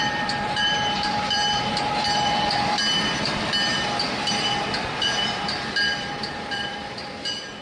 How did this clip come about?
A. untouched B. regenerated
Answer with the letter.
B